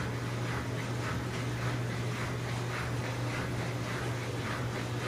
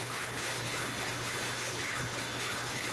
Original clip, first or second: first